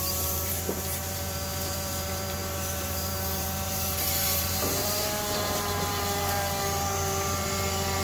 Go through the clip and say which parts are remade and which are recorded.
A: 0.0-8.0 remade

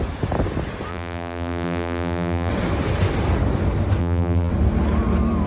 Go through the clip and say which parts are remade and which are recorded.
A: 0.0-0.9 recorded; 0.9-2.5 remade; 2.5-4.0 recorded; 4.0-4.5 remade; 4.5-5.5 recorded

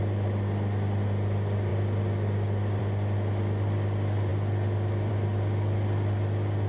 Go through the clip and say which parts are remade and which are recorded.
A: 0.0-6.7 recorded

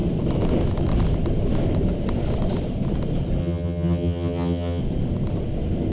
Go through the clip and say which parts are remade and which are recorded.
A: 0.0-3.4 recorded; 3.4-4.8 remade; 4.8-5.9 recorded